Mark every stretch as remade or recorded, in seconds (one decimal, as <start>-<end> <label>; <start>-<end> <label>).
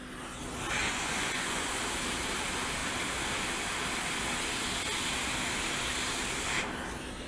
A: 0.0-0.8 recorded; 0.8-1.8 remade; 1.8-7.3 recorded